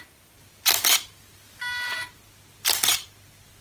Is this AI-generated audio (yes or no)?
no